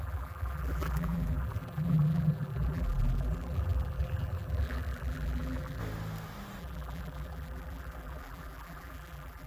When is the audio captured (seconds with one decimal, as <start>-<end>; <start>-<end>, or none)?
5.8-6.6